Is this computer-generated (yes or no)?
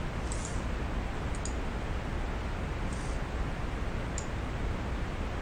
no